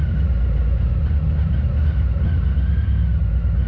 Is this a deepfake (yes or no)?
no